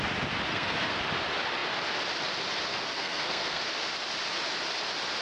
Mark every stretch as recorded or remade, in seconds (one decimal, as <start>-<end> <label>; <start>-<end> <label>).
0.0-0.5 recorded; 0.5-1.0 remade; 1.0-2.7 recorded; 2.7-3.6 remade; 3.6-5.2 recorded